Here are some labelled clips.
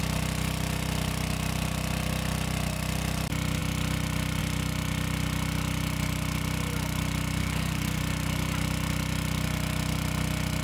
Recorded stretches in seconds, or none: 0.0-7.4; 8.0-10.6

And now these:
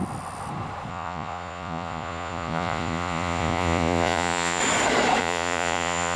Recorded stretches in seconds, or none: 0.0-0.9; 4.6-5.2

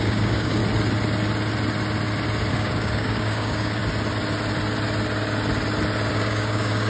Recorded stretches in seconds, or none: 0.6-2.5; 3.8-6.1

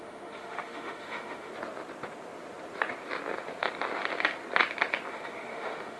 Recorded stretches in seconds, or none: 1.5-5.1

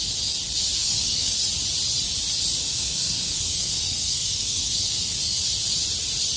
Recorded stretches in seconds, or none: 0.0-0.8; 1.4-2.6; 5.4-6.4